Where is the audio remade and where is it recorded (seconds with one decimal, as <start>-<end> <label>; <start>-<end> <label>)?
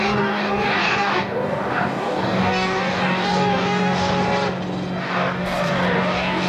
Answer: 0.0-4.2 remade; 4.2-5.0 recorded; 5.0-6.5 remade